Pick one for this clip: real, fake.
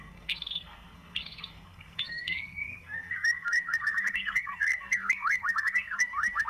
fake